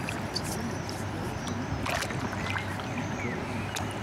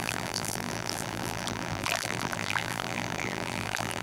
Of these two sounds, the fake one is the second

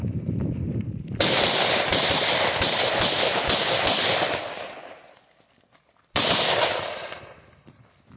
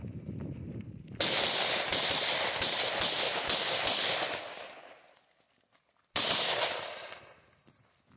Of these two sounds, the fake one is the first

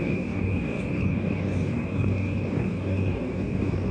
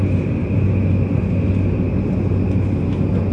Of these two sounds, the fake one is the first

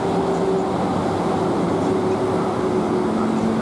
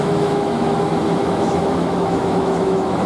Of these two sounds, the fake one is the second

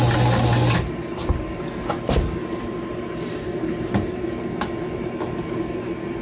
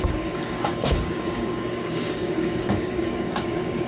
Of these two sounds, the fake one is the second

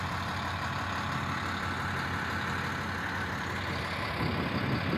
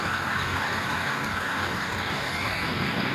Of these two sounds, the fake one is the second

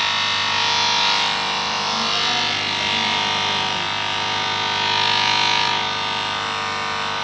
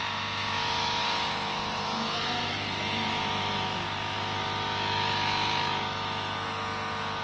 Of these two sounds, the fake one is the second